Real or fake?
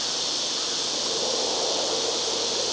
real